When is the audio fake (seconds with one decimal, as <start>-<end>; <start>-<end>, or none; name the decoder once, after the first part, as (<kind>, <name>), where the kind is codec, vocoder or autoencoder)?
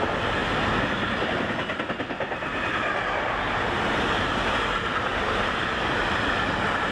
none